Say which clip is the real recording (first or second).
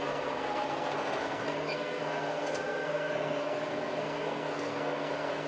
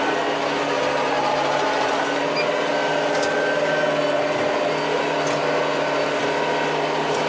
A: second